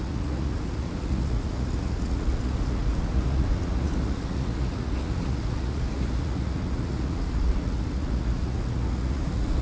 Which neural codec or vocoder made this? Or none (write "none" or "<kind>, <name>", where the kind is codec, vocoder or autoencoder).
vocoder, Vocos